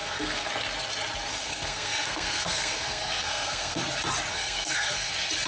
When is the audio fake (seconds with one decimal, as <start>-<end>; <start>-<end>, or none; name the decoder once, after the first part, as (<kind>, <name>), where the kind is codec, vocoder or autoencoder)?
0.0-0.5 (codec, SNAC); 1.3-3.8; 4.3-5.1